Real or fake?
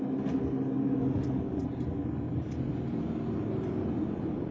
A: real